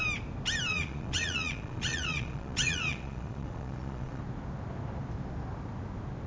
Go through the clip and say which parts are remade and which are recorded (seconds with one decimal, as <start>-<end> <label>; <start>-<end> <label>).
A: 0.0-0.7 recorded; 0.7-4.2 remade; 4.2-6.3 recorded